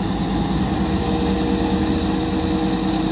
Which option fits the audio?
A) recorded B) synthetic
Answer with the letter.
A